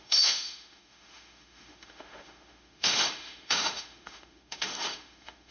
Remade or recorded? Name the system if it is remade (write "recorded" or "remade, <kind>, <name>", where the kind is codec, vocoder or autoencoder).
remade, autoencoder, DAC-VAE